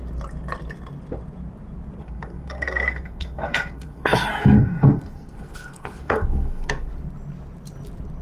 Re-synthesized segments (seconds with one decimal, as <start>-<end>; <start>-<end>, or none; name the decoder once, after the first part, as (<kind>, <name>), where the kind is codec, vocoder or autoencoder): 2.0-6.9 (codec, SNAC)